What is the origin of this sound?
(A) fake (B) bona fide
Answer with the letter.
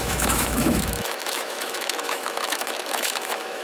A